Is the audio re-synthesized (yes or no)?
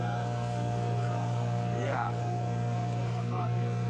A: yes